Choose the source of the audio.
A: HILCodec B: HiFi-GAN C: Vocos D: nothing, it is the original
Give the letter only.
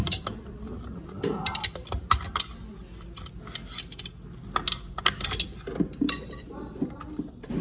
D